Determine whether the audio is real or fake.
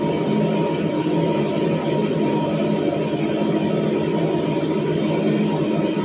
real